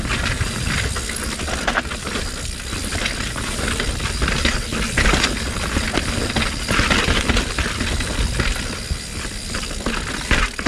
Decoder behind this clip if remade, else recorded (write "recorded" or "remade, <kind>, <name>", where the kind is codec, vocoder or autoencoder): recorded